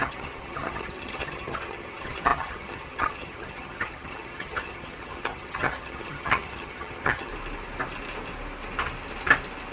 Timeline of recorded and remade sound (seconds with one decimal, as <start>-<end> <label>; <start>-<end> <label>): 0.0-7.3 remade; 7.3-9.7 recorded